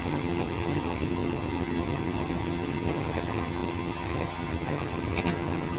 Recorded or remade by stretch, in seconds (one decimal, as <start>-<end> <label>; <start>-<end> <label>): 0.0-5.8 remade

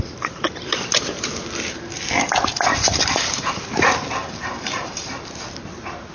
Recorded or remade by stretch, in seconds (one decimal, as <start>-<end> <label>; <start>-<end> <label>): 0.0-2.5 recorded; 2.5-3.6 remade; 3.6-4.2 recorded; 4.2-5.3 remade; 5.3-6.1 recorded

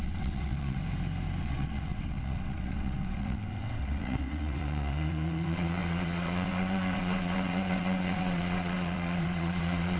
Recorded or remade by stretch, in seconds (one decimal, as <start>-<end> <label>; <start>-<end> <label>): 0.0-0.8 remade; 0.8-1.4 recorded; 1.4-10.0 remade

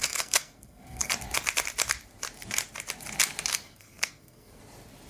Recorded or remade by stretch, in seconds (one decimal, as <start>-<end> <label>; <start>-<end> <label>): 0.0-1.1 remade; 1.1-3.5 recorded; 3.5-4.6 remade; 4.6-5.1 recorded

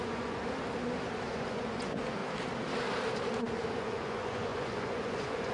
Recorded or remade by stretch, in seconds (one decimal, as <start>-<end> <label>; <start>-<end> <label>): 0.0-0.4 remade; 0.4-1.3 recorded; 1.3-2.2 remade; 2.2-3.7 recorded; 3.7-5.5 remade

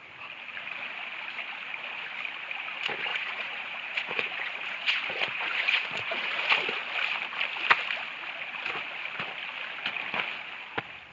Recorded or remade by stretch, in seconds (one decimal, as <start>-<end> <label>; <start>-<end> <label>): 0.0-3.1 recorded; 3.1-6.5 remade; 6.5-11.1 recorded

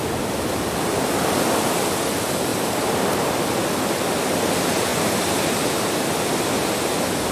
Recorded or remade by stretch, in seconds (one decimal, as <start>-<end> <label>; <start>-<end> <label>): 0.0-0.7 remade; 0.7-2.5 recorded; 2.5-3.3 remade; 3.3-4.9 recorded; 4.9-6.1 remade; 6.1-7.3 recorded

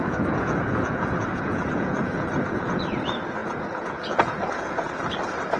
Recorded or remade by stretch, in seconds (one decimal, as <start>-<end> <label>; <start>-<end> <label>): 0.0-3.0 remade; 3.0-3.4 recorded; 3.4-4.9 remade; 4.9-5.6 recorded